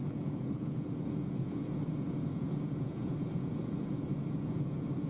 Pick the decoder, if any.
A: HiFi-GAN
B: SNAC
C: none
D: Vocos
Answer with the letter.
D